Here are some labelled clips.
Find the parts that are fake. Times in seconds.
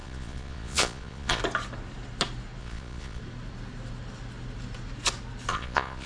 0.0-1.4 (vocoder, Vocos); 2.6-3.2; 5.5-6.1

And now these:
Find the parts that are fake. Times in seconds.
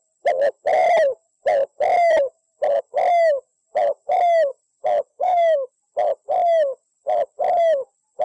5.1-5.7 (autoencoder, DAC-VAE)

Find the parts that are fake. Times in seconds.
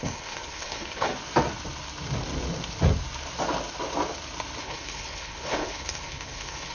0.0-1.1 (codec, HILCodec); 4.6-6.7